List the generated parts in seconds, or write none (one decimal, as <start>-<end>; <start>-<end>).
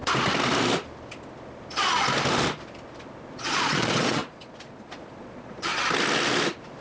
3.3-5.7